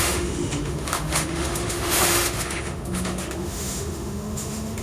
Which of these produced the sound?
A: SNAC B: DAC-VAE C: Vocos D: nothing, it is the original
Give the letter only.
B